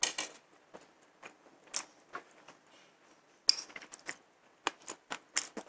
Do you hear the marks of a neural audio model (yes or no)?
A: no